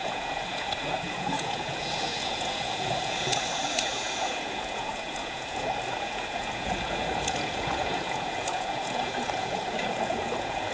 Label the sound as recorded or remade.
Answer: remade